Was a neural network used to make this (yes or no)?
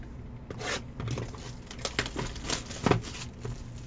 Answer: no